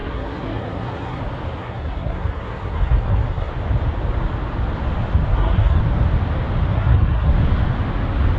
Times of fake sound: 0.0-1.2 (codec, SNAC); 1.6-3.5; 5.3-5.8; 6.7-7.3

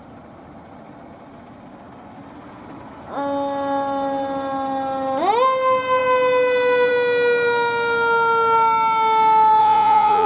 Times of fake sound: 9.6-10.3 (vocoder, Vocos)

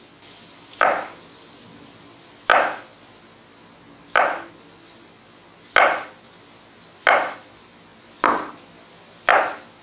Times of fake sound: none

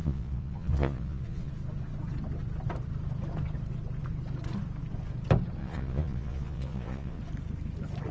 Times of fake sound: 0.0-1.5 (vocoder, Vocos); 5.6-7.2

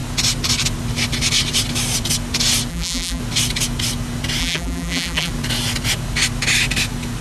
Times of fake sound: 2.7-3.2 (vocoder, BigVGAN v2); 4.4-5.3